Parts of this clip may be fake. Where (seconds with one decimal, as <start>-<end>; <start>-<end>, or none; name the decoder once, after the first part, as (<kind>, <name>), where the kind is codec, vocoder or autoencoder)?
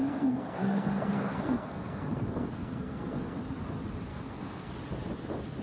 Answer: 0.0-3.4 (codec, SNAC); 4.1-4.7